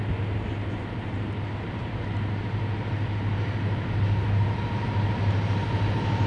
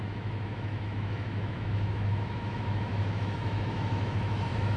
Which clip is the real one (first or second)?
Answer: first